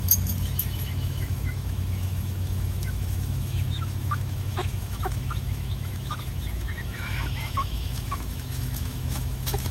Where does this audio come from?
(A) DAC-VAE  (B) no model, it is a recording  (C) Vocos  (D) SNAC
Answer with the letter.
A